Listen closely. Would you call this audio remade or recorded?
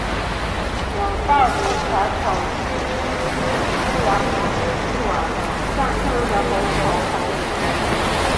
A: recorded